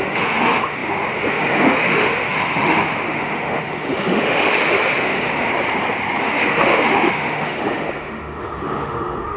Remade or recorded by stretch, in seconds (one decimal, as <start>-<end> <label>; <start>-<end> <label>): 0.0-5.5 remade; 5.5-6.2 recorded; 6.2-9.4 remade